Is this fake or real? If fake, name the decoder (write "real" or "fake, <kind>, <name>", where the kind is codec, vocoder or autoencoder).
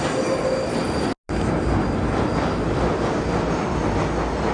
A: real